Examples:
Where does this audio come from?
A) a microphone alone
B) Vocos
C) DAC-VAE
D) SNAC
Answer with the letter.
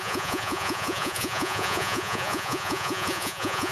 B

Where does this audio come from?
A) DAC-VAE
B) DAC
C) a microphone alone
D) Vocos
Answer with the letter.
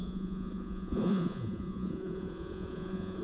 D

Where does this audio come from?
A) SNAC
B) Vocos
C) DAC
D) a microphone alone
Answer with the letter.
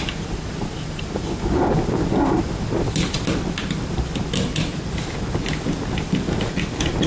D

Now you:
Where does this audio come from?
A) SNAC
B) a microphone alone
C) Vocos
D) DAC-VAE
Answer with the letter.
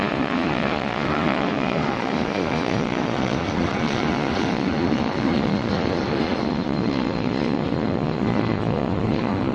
C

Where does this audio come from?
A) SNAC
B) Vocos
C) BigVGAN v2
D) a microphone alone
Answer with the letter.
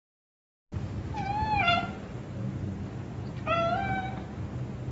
D